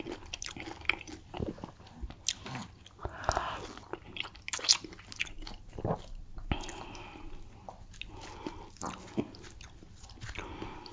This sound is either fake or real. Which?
real